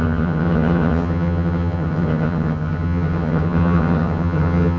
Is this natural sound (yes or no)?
no